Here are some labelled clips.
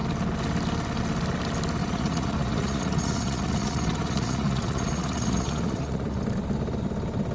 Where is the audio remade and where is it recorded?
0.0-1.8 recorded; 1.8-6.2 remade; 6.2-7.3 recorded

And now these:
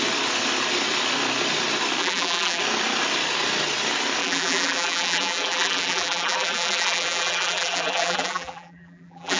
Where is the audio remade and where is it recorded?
0.0-2.0 recorded; 2.0-2.6 remade; 2.6-4.2 recorded; 4.2-9.4 remade

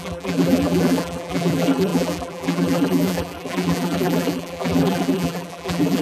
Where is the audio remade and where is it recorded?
0.0-6.0 remade

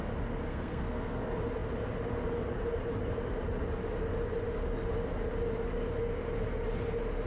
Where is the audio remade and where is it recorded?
0.0-0.5 recorded; 0.5-1.2 remade; 1.2-7.3 recorded

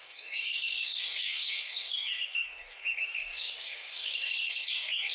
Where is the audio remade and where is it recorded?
0.0-5.1 remade

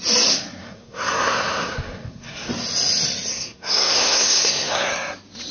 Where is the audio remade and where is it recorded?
0.0-0.6 recorded; 0.6-2.5 remade; 2.5-3.3 recorded; 3.3-4.9 remade; 4.9-5.5 recorded

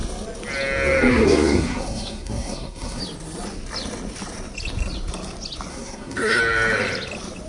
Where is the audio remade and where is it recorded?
0.0-1.1 recorded; 1.1-3.0 remade; 3.0-5.7 recorded; 5.7-6.4 remade; 6.4-7.5 recorded

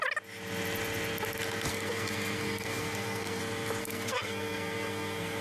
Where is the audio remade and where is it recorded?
0.0-1.7 recorded; 1.7-3.4 remade; 3.4-3.8 recorded; 3.8-5.4 remade